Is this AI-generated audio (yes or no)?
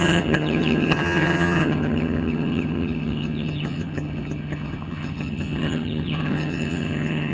yes